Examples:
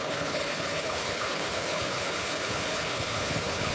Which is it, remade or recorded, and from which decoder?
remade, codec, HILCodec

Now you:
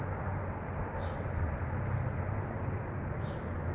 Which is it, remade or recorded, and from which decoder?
recorded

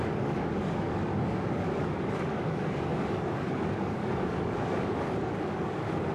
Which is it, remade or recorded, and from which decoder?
remade, codec, DAC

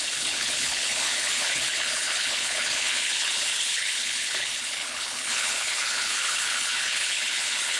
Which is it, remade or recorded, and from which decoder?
remade, codec, HILCodec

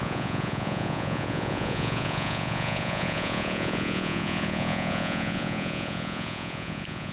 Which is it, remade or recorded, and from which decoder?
remade, vocoder, Vocos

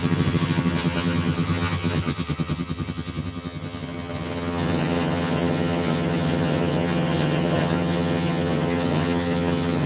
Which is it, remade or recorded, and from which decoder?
remade, vocoder, HiFi-GAN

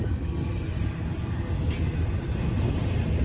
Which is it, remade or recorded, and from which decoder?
recorded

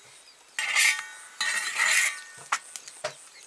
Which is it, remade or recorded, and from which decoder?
recorded